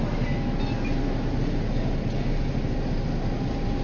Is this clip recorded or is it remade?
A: recorded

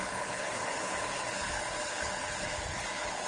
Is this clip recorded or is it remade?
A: remade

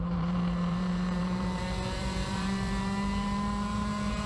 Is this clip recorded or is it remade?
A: remade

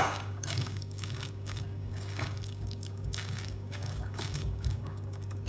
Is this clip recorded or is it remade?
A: remade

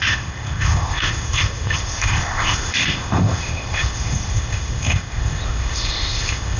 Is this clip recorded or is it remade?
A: remade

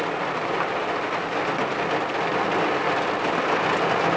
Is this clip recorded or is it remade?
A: recorded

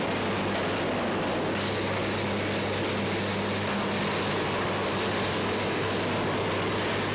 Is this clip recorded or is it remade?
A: recorded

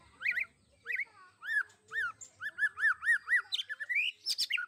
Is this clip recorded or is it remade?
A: recorded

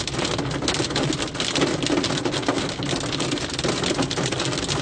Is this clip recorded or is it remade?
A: recorded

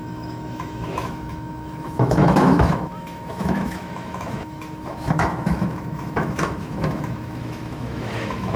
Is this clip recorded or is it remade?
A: remade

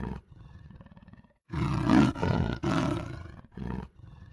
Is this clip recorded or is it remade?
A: remade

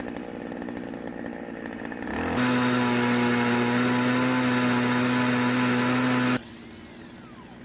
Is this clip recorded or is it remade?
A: recorded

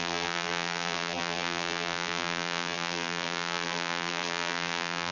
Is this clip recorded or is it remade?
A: remade